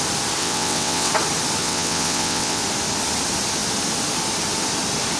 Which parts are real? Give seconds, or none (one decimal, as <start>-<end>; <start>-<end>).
0.0-0.4; 1.1-1.6; 2.6-5.2